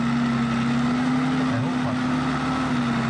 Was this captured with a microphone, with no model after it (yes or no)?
yes